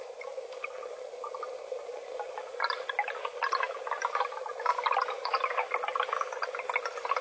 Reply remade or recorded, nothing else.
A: recorded